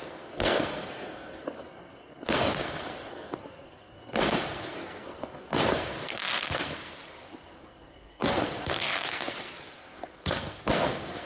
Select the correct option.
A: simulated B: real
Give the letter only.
A